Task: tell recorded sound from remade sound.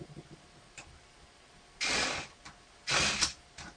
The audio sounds recorded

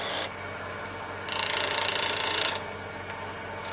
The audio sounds recorded